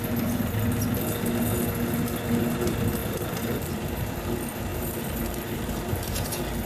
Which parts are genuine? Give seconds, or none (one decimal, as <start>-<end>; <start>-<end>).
0.0-3.0; 4.1-4.7; 6.3-6.7